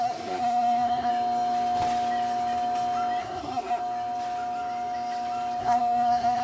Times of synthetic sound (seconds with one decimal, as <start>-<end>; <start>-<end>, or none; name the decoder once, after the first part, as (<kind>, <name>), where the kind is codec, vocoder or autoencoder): 0.0-1.1 (codec, SNAC); 3.2-3.8; 5.6-6.4